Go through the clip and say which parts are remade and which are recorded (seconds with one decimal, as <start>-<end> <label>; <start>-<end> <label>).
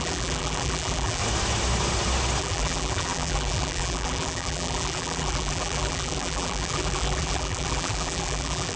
0.0-1.2 remade; 1.2-2.4 recorded; 2.4-8.8 remade